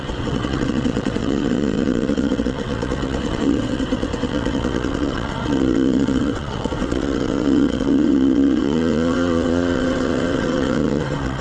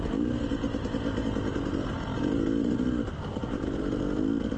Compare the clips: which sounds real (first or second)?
second